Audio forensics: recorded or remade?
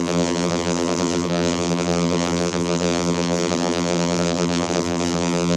remade